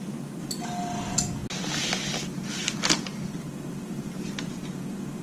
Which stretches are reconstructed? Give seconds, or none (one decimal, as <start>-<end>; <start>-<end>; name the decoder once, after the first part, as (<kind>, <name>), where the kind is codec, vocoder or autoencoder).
none